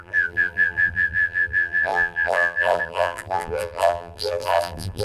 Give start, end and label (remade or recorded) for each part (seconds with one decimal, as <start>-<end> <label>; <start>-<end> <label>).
0.0-5.0 remade